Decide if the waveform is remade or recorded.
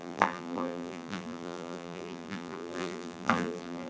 remade